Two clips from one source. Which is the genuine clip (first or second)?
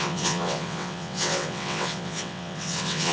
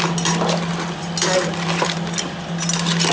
second